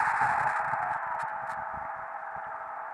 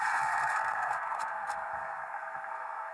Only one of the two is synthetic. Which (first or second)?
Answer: second